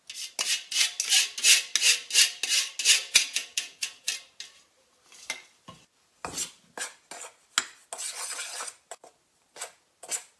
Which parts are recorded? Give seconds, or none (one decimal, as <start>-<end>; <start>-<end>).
0.0-3.0; 4.1-10.4